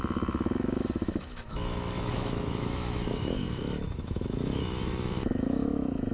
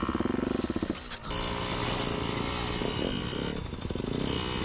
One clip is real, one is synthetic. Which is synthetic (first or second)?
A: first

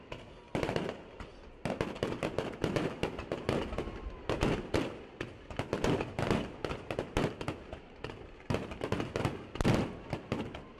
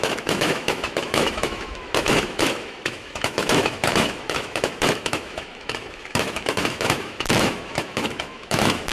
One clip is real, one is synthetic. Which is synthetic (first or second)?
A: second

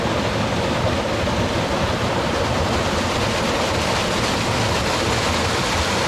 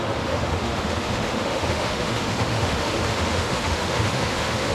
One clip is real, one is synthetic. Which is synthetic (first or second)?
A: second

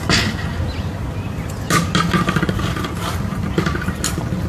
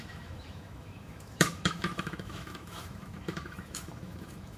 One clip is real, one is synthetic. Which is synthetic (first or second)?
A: second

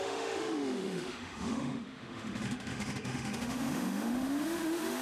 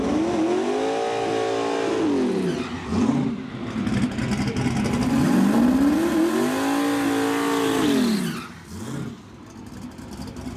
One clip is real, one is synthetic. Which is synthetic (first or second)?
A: first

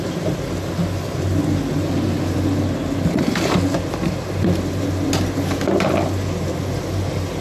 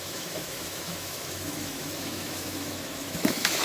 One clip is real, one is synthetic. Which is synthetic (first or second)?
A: second